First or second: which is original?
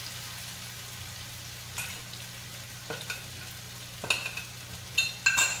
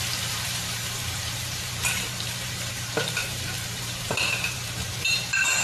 first